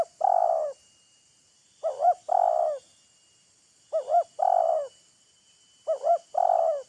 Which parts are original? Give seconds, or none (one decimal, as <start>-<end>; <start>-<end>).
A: 0.0-6.9